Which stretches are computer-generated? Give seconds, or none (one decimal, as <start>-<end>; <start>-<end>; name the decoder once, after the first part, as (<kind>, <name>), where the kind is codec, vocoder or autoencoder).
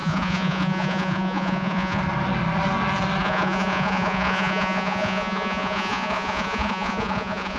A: 0.0-2.0 (vocoder, Vocos); 3.2-7.6